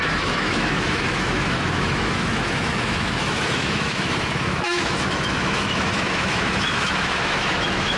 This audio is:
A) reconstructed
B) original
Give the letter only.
A